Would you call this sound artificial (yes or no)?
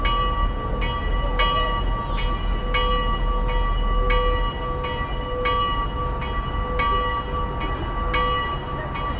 no